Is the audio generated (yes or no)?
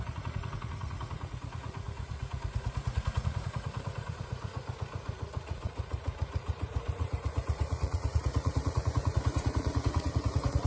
yes